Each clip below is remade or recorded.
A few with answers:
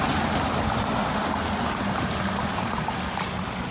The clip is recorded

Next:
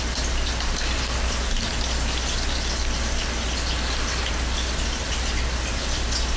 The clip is recorded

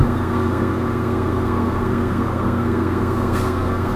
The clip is remade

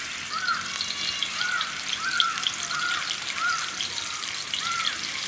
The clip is recorded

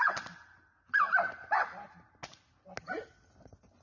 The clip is recorded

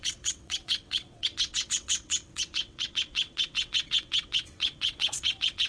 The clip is remade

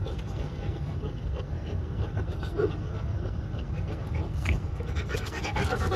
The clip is remade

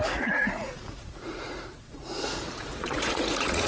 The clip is remade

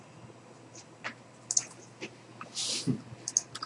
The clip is recorded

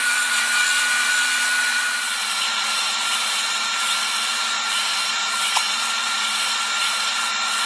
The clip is remade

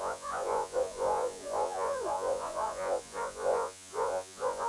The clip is remade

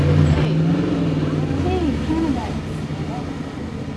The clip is recorded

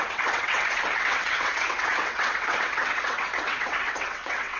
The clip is remade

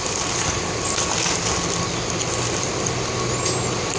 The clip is recorded